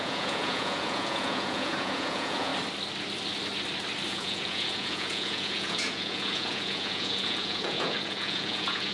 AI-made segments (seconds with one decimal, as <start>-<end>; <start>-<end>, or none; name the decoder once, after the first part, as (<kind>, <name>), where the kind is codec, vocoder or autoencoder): 0.0-2.5 (vocoder, Vocos); 4.1-8.9